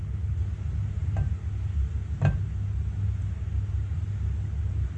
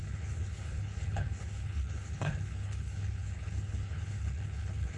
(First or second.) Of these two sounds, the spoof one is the second